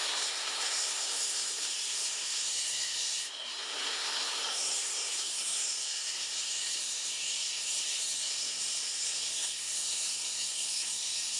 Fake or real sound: fake